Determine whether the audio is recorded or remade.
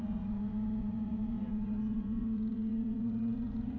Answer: remade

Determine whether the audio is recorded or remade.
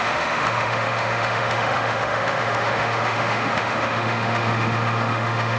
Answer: remade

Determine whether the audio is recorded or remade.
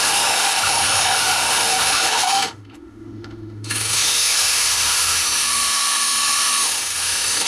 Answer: remade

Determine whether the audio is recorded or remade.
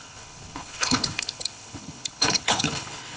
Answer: remade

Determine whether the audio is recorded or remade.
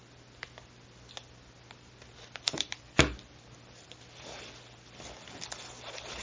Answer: recorded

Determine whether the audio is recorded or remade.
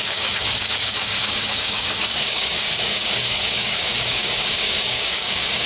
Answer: remade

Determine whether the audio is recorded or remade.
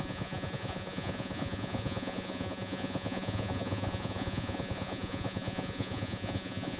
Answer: remade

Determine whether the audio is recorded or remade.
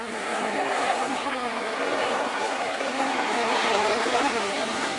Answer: remade